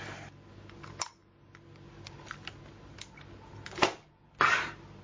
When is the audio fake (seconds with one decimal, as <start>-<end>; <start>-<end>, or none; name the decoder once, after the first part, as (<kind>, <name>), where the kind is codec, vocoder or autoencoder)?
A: none